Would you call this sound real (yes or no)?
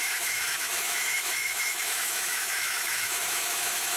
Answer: no